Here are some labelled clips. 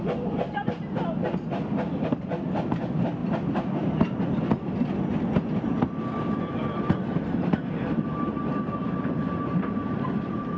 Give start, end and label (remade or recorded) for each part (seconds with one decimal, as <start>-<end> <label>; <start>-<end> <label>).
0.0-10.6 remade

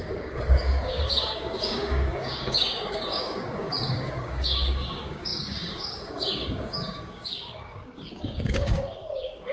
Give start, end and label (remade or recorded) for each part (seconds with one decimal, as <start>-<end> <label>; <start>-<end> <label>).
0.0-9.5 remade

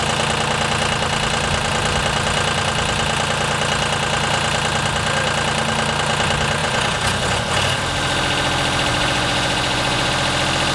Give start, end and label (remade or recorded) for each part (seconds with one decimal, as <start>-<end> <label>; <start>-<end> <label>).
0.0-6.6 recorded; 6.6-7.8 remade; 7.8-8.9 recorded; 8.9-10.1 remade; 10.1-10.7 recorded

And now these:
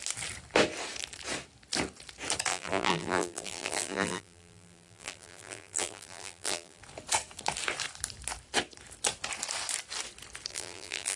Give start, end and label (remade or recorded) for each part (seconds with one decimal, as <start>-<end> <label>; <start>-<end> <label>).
0.0-2.5 recorded; 2.5-6.8 remade; 6.8-10.5 recorded; 10.5-11.2 remade

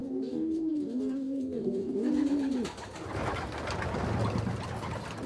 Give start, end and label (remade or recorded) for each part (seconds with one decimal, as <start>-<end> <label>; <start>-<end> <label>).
0.0-2.1 remade; 2.1-5.3 recorded

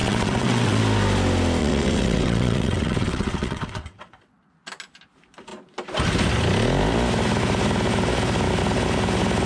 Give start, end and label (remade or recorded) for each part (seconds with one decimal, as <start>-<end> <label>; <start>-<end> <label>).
0.0-0.8 remade; 0.8-1.6 recorded; 1.6-4.5 remade; 4.5-9.5 recorded